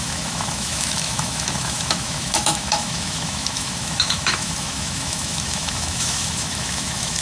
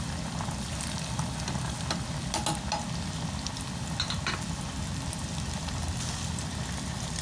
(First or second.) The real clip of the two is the second